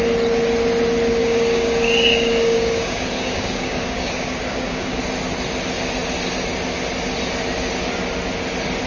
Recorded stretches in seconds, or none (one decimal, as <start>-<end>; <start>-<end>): 0.0-1.2; 5.0-8.9